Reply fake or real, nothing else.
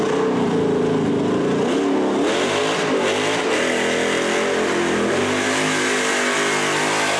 real